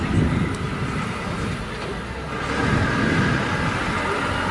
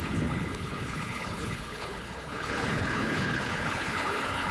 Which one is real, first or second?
first